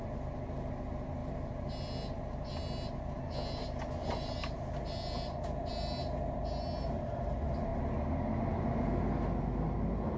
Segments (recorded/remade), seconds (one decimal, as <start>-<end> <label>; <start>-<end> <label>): 0.0-10.2 recorded